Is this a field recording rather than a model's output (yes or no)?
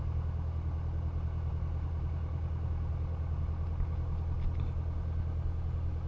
yes